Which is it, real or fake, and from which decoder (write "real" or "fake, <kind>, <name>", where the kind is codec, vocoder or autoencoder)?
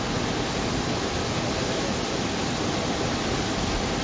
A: real